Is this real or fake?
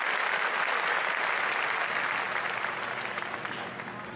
real